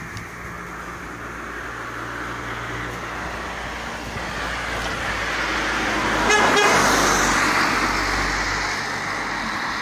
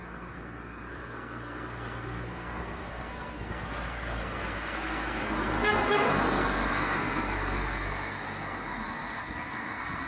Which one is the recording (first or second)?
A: first